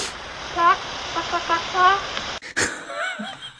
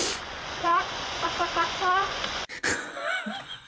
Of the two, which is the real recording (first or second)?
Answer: first